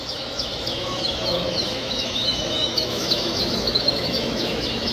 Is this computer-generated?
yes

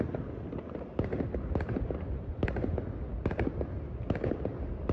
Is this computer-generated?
no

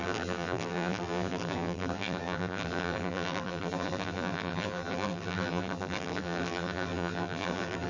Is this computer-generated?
yes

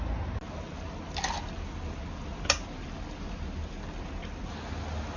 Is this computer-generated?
no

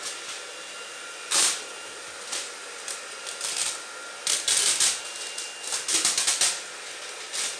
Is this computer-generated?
no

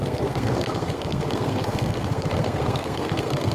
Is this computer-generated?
yes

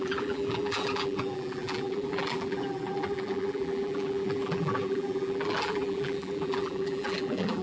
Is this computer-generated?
yes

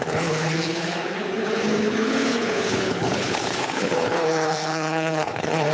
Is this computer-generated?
yes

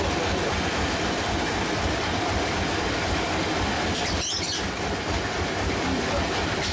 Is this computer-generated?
no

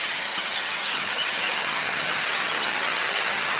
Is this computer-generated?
yes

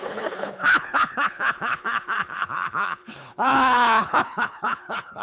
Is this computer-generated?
yes